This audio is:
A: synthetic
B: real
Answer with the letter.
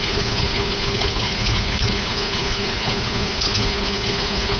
A